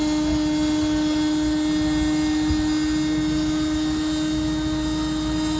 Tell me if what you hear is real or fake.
real